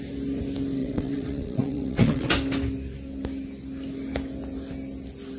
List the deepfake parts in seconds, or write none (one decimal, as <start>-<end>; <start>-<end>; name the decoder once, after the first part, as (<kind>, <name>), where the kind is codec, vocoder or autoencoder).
0.8-2.3 (vocoder, WaveNeXt)